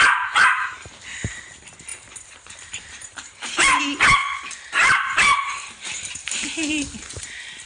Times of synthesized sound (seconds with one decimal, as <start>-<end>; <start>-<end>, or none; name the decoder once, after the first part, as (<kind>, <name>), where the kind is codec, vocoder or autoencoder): 1.9-3.8 (vocoder, BigVGAN v2); 4.2-7.7

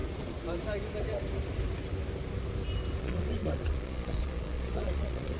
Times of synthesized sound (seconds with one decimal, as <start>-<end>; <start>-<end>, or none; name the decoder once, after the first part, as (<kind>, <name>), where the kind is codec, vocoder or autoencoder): 3.0-5.4 (vocoder, Vocos)